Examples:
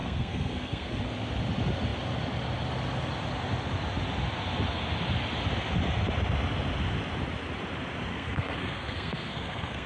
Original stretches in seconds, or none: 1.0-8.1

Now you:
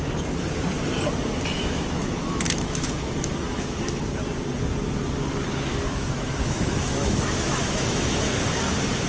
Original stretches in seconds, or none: 0.0-1.6; 3.8-5.7; 8.5-9.1